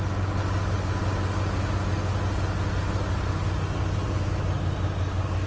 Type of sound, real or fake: real